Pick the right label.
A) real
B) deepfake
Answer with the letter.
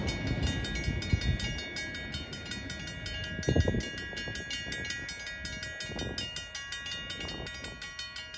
A